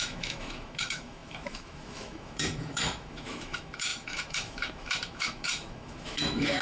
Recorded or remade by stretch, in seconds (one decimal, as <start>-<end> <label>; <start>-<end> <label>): 0.0-6.6 remade